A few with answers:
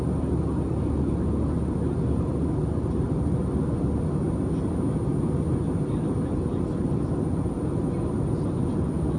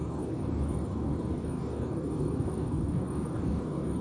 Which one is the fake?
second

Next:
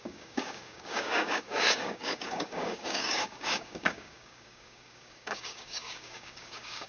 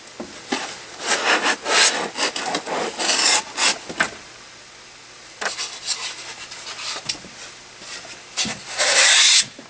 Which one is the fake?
first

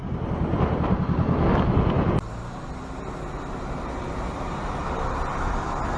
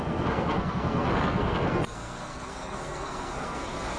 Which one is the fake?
second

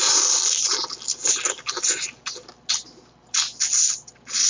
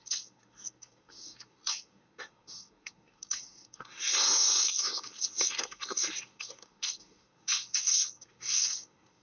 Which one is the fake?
second